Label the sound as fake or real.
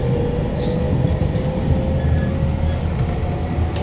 real